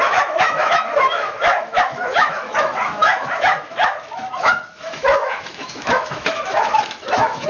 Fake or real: fake